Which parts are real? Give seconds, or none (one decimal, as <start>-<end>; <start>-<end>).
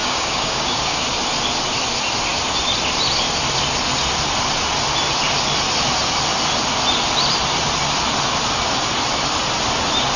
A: 1.0-10.2